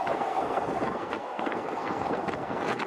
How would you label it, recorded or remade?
remade